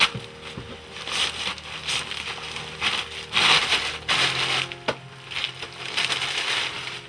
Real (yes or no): yes